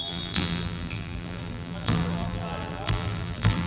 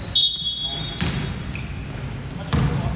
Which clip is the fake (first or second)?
first